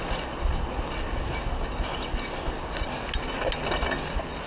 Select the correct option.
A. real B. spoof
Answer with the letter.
A